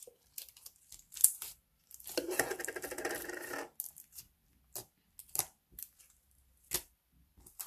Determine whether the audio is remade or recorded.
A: recorded